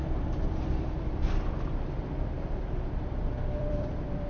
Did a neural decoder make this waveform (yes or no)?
yes